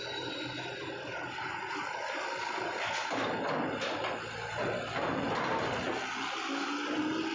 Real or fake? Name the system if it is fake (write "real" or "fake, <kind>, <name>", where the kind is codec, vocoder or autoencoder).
real